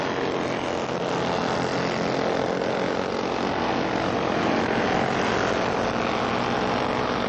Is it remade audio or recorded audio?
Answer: recorded